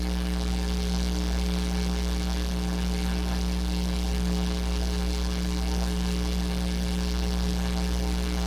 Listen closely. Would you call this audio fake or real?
fake